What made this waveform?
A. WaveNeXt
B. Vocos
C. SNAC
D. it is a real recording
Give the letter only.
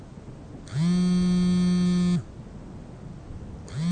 D